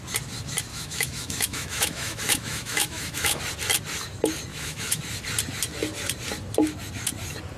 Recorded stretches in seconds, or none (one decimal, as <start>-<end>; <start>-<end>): 0.0-0.7; 3.4-4.5; 5.0-7.6